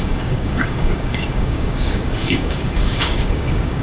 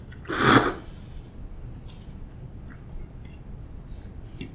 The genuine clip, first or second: second